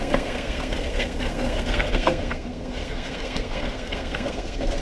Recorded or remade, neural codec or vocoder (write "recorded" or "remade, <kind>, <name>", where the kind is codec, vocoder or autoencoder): remade, codec, SNAC